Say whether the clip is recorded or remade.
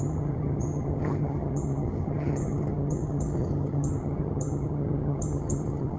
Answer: remade